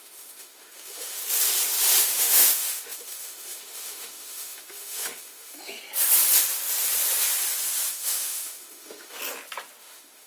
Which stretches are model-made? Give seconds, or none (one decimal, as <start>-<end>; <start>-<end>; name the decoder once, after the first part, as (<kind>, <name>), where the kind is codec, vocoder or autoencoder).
0.0-1.2 (autoencoder, DAC-VAE); 2.0-5.8; 7.9-9.2; 9.8-10.3